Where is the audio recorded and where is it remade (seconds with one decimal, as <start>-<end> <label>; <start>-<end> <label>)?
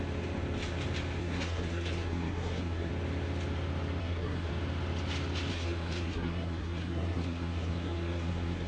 0.0-1.2 recorded; 1.2-2.9 remade; 2.9-4.0 recorded; 4.0-4.5 remade; 4.5-5.5 recorded; 5.5-8.7 remade